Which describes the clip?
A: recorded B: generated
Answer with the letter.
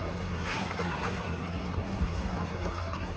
B